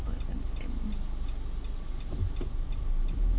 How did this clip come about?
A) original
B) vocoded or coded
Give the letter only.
A